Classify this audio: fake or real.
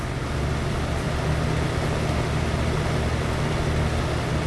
real